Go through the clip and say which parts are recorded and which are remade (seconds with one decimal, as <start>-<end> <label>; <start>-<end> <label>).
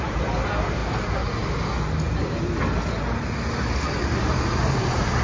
0.0-0.8 remade; 0.8-3.9 recorded; 3.9-5.2 remade